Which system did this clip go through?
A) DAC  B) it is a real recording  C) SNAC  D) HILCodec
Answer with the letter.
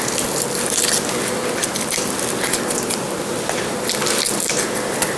B